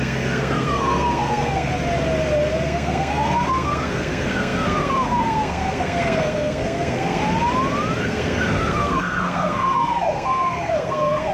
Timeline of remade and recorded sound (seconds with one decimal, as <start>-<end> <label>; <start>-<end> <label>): 0.0-1.7 remade; 1.7-2.5 recorded; 2.5-7.2 remade; 7.2-8.0 recorded; 8.0-11.3 remade